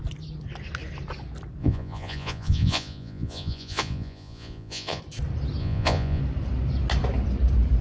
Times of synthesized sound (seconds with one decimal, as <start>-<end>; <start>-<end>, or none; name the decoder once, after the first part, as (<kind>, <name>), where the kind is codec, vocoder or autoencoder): 1.6-5.0 (vocoder, Vocos); 5.6-6.2